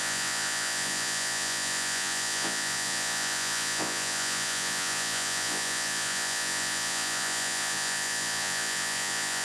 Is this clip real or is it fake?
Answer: fake